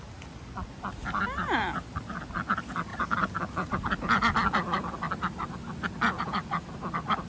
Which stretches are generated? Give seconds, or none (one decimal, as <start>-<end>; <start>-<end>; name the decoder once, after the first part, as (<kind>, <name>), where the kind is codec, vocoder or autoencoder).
none